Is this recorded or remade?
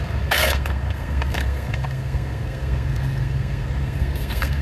remade